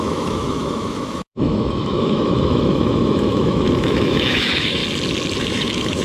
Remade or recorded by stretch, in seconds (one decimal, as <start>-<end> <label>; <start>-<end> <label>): 0.0-4.8 remade; 4.8-5.4 recorded; 5.4-6.0 remade